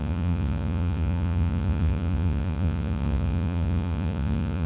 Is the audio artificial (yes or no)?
yes